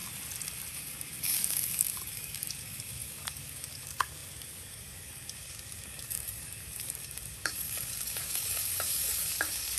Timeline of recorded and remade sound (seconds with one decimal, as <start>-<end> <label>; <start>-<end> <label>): 0.0-0.7 recorded; 0.7-9.8 remade